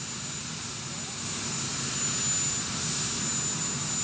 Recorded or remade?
recorded